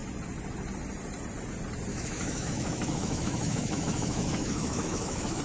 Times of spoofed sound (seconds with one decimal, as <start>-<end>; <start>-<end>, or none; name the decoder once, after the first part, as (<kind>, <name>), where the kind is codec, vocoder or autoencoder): 1.9-5.4 (autoencoder, DAC-VAE)

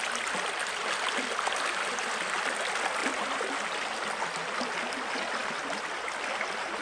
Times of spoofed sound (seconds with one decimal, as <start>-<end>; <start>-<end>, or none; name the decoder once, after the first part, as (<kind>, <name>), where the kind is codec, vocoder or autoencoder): none